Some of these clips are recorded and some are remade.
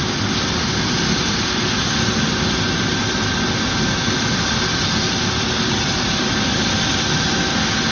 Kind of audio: recorded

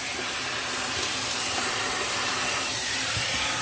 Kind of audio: remade